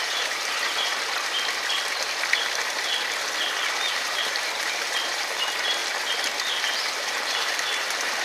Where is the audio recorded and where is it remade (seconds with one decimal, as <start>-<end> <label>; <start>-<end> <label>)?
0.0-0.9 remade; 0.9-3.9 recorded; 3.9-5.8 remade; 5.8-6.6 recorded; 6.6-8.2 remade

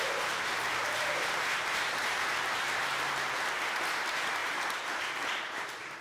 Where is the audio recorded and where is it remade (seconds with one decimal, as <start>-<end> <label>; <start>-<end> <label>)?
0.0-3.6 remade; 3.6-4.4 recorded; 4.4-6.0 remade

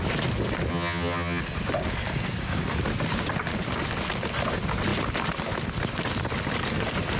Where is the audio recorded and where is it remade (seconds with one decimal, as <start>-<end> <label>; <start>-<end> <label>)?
0.0-0.7 recorded; 0.7-1.4 remade; 1.4-7.2 recorded

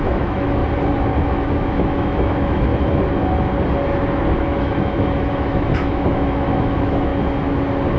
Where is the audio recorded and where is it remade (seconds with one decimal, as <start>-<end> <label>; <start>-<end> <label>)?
0.0-0.6 remade; 0.6-1.2 recorded; 1.2-2.7 remade; 2.7-4.6 recorded; 4.6-7.1 remade; 7.1-8.0 recorded

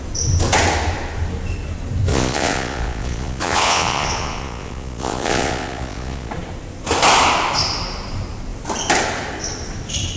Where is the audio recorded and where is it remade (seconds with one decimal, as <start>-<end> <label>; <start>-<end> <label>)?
0.0-2.1 recorded; 2.1-6.3 remade; 6.3-10.2 recorded

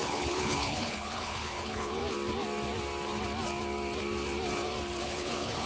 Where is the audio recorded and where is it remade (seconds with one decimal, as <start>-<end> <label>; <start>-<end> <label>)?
0.0-2.0 remade; 2.0-5.0 recorded; 5.0-5.7 remade

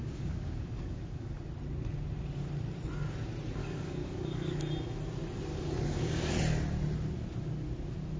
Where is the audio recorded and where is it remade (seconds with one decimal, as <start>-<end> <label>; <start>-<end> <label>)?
0.0-1.4 remade; 1.4-3.6 recorded; 3.6-4.6 remade; 4.6-5.5 recorded; 5.5-6.4 remade; 6.4-8.2 recorded

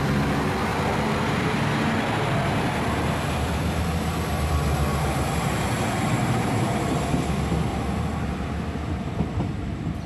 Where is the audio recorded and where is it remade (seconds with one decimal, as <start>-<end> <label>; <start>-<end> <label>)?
0.0-4.9 recorded; 4.9-7.0 remade; 7.0-7.7 recorded; 7.7-10.1 remade